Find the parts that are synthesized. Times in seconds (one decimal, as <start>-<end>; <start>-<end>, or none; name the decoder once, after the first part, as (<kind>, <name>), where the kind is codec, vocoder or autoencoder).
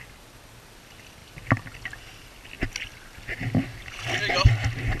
none